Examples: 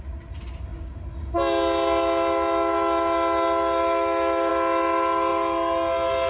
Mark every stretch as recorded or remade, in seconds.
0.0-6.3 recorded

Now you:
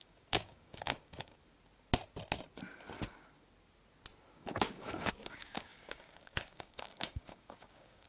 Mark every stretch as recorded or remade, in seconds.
0.0-1.4 remade; 1.4-4.3 recorded; 4.3-8.1 remade

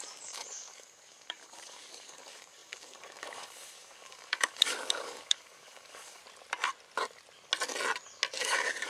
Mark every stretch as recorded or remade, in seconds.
0.0-6.2 remade; 6.2-8.4 recorded; 8.4-8.9 remade

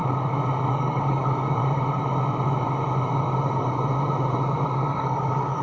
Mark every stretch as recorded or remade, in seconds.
0.0-0.7 recorded; 0.7-1.6 remade; 1.6-5.0 recorded; 5.0-5.6 remade

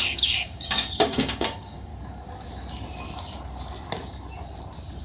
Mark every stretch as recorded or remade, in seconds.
0.0-1.9 remade; 1.9-5.0 recorded

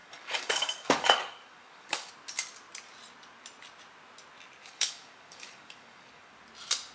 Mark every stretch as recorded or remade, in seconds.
0.0-2.1 remade; 2.1-4.6 recorded; 4.6-6.3 remade; 6.3-6.9 recorded